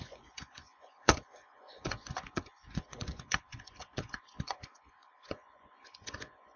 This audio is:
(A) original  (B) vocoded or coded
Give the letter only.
B